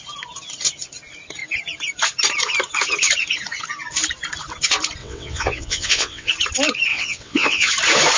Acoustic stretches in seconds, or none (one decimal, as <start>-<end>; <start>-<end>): 0.0-5.0; 6.3-6.9; 7.7-8.2